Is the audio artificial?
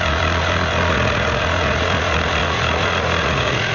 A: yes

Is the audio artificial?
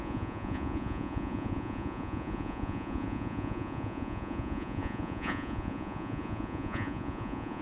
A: yes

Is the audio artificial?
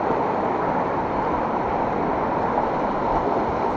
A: no